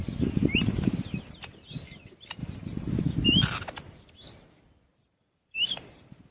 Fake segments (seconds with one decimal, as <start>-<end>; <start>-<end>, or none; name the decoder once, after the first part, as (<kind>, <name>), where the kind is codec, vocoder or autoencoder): 0.0-0.9 (vocoder, BigVGAN v2); 2.4-3.0; 4.9-6.3